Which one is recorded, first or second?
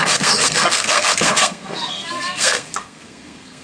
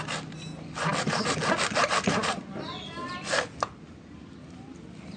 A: second